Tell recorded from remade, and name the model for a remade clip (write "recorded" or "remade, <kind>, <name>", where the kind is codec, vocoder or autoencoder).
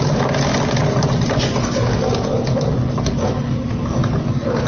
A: recorded